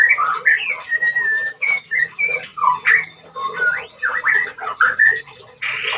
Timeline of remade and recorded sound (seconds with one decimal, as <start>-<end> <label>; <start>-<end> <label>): 0.0-0.9 recorded; 0.9-2.0 remade; 2.0-6.0 recorded

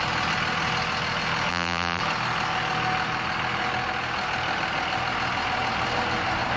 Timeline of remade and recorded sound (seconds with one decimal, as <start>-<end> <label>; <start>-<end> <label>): 0.0-1.5 recorded; 1.5-2.0 remade; 2.0-6.6 recorded

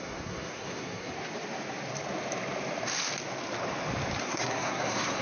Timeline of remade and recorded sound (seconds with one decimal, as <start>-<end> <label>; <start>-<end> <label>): 0.0-1.1 remade; 1.1-4.2 recorded; 4.2-5.2 remade

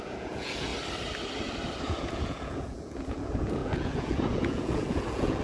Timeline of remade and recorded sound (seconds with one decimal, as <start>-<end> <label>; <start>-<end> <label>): 0.0-0.7 remade; 0.7-1.8 recorded; 1.8-5.4 remade

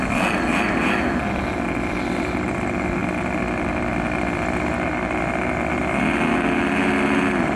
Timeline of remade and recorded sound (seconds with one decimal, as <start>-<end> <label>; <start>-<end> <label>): 0.0-7.6 recorded